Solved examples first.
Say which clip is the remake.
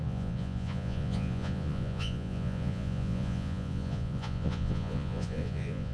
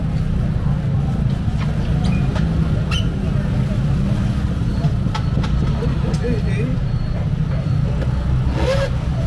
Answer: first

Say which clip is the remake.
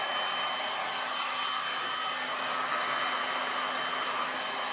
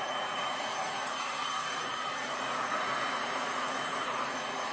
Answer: second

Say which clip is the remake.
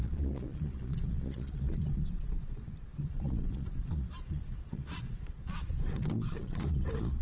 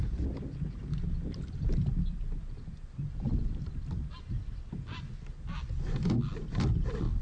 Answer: first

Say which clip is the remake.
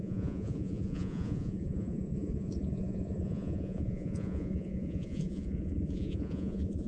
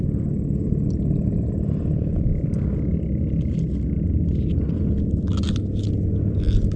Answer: first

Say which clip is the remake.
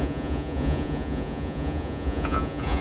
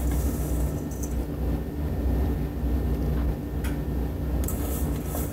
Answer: first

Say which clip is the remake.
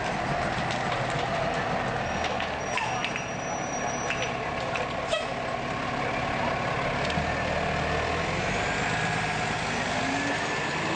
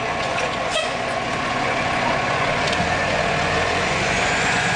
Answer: second